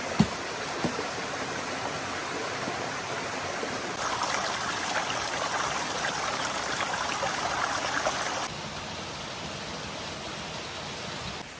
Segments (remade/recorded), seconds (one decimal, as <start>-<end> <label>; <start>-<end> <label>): 0.0-11.6 recorded